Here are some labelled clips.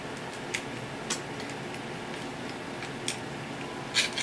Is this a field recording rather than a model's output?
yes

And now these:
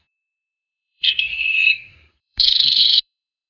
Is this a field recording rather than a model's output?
no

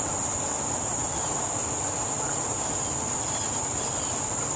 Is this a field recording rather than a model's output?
yes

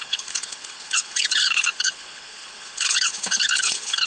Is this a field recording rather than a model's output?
no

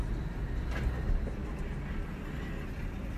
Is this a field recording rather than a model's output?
yes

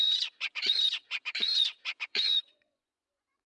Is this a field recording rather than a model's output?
no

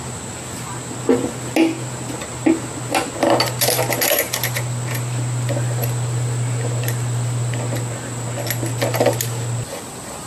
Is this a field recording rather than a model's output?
yes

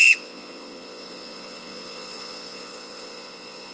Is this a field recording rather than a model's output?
no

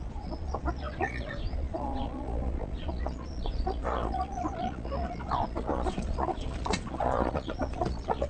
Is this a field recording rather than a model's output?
no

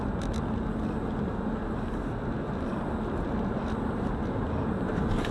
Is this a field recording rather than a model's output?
yes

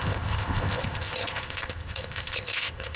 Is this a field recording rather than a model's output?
no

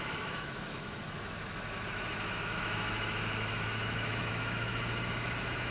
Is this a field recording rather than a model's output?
no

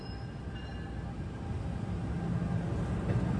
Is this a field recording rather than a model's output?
yes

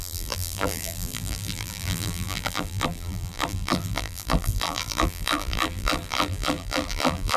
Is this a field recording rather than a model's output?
no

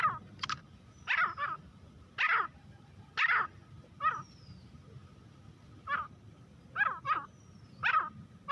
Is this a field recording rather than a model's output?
yes